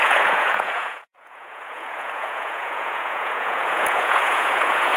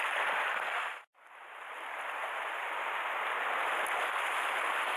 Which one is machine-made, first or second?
first